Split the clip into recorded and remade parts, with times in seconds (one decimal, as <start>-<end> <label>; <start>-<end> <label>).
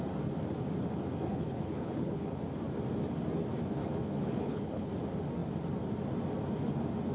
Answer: 0.0-1.3 recorded; 1.3-2.3 remade; 2.3-3.8 recorded; 3.8-4.9 remade; 4.9-7.1 recorded